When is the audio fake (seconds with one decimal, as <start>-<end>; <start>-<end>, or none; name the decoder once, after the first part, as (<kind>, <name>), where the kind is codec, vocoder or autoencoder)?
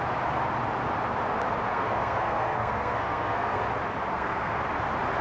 1.7-3.6 (codec, SNAC); 4.1-4.6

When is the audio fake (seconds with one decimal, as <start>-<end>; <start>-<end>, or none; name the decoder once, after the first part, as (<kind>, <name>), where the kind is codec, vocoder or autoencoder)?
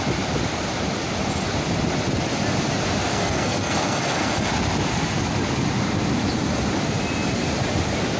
3.1-4.5 (codec, SNAC)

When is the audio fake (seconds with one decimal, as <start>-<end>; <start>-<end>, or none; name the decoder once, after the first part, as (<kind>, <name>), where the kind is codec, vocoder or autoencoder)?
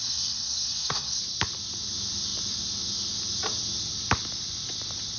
0.0-1.2 (codec, SNAC)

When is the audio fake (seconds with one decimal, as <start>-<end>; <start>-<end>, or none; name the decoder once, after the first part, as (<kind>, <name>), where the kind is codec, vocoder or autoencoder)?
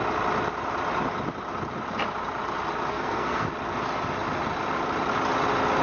2.9-3.5 (codec, SNAC)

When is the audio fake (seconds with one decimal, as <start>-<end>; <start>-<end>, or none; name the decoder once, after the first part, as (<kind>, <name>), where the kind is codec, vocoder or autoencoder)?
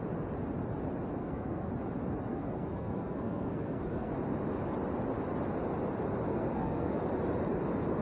1.2-1.7 (codec, SNAC); 2.3-4.1; 6.3-7.0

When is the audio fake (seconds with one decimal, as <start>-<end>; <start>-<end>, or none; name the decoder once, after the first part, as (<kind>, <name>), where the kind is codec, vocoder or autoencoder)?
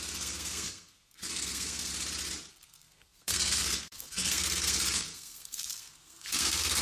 0.0-1.9 (codec, SNAC); 2.5-6.8